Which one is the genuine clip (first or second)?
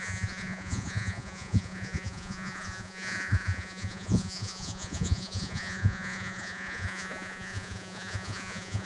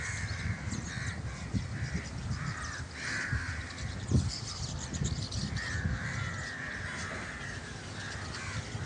second